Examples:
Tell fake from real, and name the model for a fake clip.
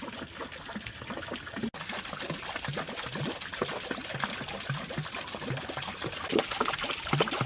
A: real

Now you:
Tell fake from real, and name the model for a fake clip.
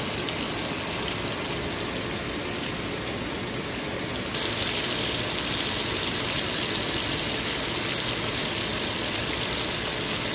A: real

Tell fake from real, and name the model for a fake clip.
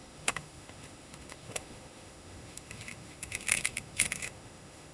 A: fake, autoencoder, DAC-VAE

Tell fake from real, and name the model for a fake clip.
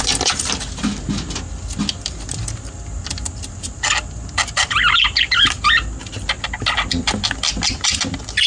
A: real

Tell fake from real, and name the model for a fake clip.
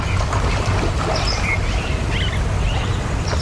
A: real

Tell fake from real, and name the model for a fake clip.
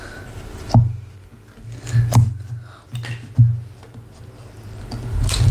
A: real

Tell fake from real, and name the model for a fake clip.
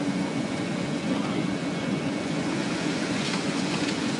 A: fake, vocoder, Vocos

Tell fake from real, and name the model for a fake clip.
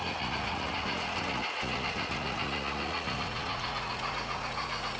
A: fake, vocoder, Vocos